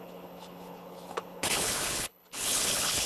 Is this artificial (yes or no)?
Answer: yes